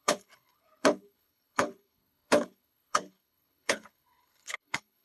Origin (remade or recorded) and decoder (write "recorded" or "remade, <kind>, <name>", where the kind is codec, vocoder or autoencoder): remade, codec, HILCodec